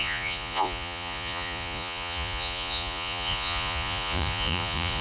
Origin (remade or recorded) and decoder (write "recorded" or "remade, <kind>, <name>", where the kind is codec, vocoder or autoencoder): remade, vocoder, Vocos